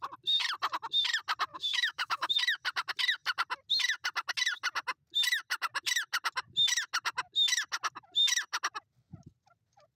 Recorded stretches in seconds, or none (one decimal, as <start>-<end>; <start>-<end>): 0.0-1.5; 2.3-10.0